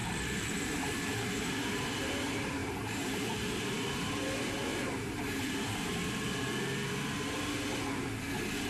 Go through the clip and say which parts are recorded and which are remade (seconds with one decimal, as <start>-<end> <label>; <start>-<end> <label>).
0.0-2.1 remade; 2.1-2.6 recorded; 2.6-4.1 remade; 4.1-4.7 recorded; 4.7-6.5 remade; 6.5-8.7 recorded